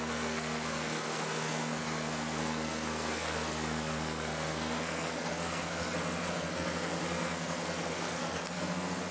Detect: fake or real fake